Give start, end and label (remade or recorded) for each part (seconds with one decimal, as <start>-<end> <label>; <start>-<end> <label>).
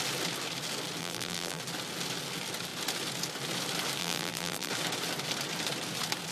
0.0-1.0 recorded; 1.0-1.6 remade; 1.6-4.0 recorded; 4.0-4.7 remade; 4.7-6.3 recorded